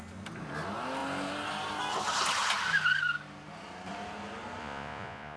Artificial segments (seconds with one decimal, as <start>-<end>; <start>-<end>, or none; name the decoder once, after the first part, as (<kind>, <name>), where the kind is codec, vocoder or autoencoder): 4.6-5.4 (vocoder, Vocos)